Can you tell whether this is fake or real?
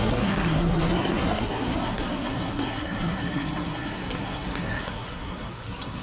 fake